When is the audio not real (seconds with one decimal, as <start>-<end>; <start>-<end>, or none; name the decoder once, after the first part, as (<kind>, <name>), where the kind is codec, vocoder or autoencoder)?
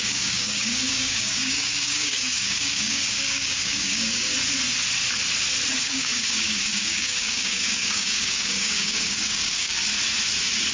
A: 0.0-4.3 (codec, DAC); 5.8-9.8